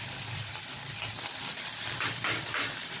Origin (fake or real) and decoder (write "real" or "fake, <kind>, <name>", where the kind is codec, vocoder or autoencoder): fake, vocoder, BigVGAN v2